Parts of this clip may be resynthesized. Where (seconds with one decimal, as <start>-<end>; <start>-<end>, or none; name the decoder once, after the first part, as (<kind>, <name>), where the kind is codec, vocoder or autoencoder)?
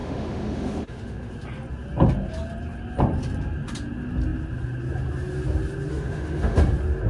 0.0-1.3 (autoencoder, DAC-VAE); 5.9-6.6